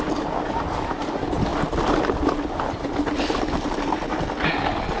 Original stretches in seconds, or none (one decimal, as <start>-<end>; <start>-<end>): 0.0-5.0